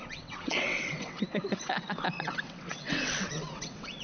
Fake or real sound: fake